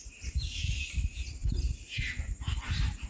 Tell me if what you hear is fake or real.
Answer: fake